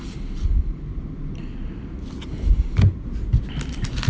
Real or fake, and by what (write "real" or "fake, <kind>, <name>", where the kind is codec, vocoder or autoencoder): real